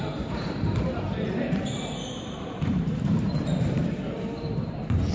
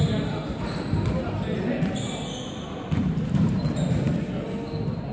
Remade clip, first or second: first